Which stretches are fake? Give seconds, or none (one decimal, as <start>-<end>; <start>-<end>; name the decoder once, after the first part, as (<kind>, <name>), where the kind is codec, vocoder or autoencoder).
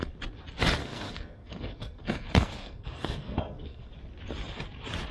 0.8-3.9 (codec, SNAC)